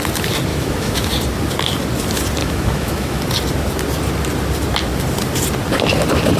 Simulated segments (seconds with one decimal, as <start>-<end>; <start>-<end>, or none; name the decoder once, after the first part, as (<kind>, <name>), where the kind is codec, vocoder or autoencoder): 0.5-1.1 (autoencoder, DAC-VAE); 2.4-3.2